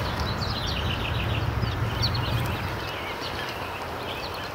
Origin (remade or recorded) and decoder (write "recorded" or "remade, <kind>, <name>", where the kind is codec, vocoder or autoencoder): recorded